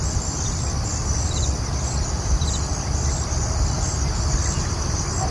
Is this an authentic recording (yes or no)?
no